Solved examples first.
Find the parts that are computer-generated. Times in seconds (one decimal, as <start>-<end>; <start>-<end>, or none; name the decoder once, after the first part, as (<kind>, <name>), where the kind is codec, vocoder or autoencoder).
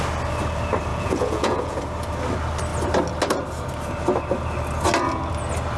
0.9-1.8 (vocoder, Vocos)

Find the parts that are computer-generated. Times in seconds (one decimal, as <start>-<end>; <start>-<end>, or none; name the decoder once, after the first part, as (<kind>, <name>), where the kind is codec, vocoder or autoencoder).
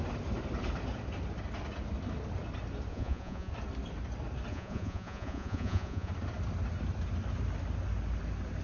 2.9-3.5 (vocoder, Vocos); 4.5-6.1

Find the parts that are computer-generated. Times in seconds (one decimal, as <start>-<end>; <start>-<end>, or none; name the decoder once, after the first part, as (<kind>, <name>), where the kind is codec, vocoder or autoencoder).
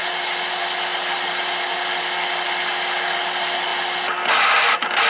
none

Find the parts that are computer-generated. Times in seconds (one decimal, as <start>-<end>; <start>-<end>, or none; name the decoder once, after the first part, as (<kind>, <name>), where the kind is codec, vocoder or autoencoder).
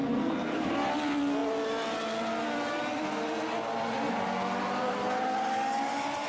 0.0-0.7 (codec, SNAC)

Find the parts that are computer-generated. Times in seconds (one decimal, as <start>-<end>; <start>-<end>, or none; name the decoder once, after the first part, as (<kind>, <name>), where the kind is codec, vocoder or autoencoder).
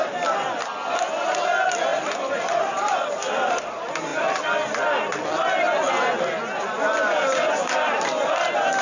1.9-3.1 (vocoder, BigVGAN v2)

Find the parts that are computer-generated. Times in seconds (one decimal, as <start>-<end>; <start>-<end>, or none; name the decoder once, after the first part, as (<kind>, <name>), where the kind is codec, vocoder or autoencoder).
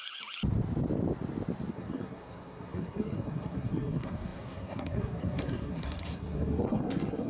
1.7-7.3 (codec, SNAC)